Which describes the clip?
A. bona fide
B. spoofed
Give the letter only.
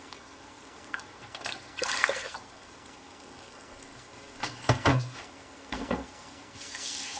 B